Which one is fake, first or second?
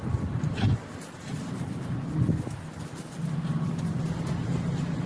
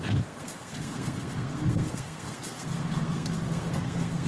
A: second